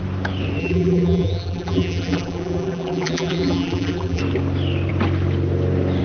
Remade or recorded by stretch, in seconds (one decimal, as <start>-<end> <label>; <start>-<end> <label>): 0.0-0.6 recorded; 0.6-4.2 remade; 4.2-6.0 recorded